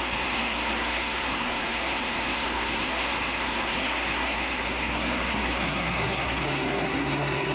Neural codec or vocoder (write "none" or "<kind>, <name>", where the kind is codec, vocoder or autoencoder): codec, SNAC